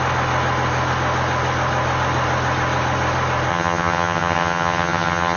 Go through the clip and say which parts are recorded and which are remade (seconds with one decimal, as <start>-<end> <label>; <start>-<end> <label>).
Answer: 0.0-3.5 recorded; 3.5-5.4 remade